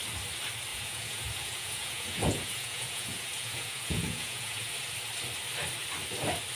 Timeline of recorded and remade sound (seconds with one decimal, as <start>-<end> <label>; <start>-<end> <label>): 0.0-0.7 recorded; 0.7-4.7 remade; 4.7-6.6 recorded